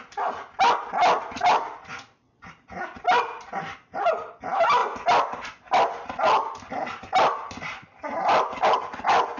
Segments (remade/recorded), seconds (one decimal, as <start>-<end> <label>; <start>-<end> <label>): 0.0-9.4 recorded